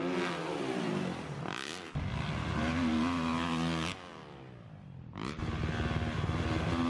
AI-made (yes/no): no